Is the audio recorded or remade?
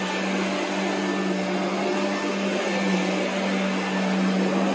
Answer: recorded